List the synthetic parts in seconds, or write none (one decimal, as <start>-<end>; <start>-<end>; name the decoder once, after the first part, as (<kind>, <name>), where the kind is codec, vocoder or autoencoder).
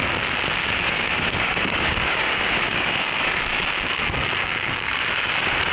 0.6-4.0 (codec, DAC); 4.4-5.3